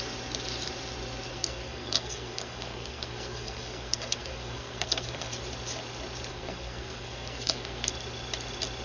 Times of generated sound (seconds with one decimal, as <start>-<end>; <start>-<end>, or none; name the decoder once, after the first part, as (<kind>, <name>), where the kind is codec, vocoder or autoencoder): 1.3-5.4 (codec, SNAC); 6.3-7.9